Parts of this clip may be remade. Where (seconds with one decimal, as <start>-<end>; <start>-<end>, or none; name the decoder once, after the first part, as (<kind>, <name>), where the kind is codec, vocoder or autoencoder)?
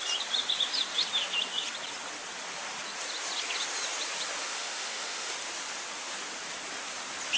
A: 4.4-5.3 (autoencoder, DAC-VAE)